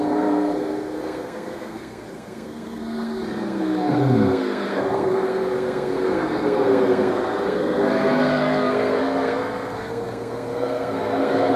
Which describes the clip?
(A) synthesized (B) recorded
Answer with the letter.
A